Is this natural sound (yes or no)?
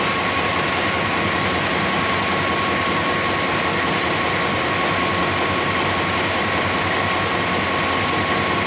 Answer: yes